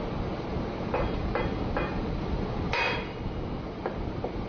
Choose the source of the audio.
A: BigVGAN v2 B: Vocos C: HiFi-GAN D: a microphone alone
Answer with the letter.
D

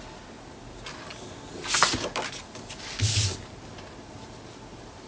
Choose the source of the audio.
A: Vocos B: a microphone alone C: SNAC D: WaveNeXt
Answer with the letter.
B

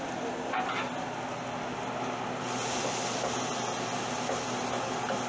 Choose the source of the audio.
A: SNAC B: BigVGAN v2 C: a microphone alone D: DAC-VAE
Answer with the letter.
C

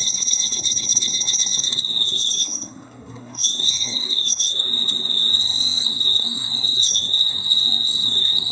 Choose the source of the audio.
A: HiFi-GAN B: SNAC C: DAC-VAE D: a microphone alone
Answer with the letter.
B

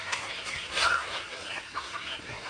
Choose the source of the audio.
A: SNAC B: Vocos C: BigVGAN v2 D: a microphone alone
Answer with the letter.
A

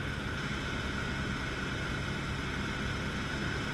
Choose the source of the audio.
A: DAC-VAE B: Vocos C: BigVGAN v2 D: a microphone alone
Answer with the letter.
D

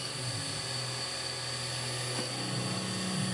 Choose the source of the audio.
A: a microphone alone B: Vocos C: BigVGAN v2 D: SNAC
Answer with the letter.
A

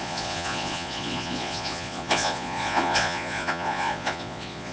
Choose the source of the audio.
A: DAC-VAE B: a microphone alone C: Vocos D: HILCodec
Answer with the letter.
C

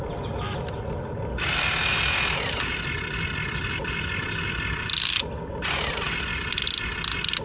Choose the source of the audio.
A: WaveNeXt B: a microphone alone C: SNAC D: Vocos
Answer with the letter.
B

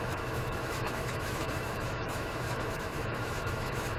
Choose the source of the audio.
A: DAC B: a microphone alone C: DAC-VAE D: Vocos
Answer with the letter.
C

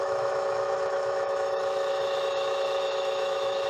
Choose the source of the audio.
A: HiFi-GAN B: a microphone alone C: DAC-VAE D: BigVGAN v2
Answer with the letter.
C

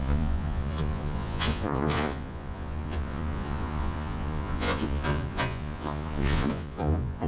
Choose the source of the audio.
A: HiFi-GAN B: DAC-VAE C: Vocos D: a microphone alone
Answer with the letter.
C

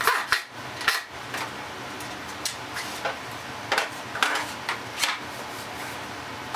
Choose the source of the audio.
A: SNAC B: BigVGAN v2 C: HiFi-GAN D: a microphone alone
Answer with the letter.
D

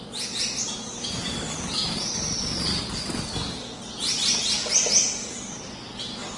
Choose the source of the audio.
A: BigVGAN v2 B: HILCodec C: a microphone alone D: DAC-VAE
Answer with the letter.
C